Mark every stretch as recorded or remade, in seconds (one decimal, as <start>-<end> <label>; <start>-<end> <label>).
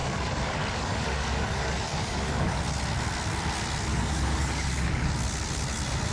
0.0-2.6 remade; 2.6-3.9 recorded; 3.9-5.1 remade; 5.1-6.1 recorded